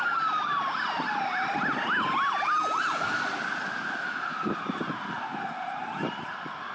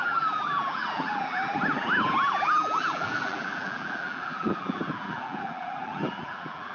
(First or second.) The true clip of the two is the first